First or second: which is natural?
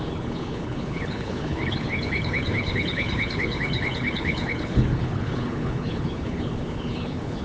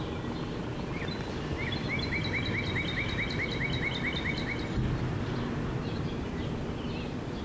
second